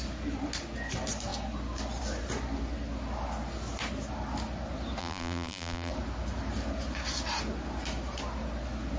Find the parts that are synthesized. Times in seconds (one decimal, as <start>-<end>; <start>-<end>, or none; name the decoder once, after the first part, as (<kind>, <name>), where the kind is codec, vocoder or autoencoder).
5.0-5.9 (vocoder, BigVGAN v2)